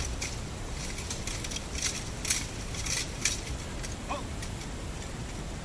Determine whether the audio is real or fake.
real